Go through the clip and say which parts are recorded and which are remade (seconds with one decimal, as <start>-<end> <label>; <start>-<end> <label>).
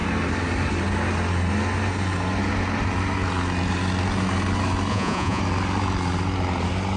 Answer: 0.0-4.9 recorded; 4.9-5.4 remade; 5.4-7.0 recorded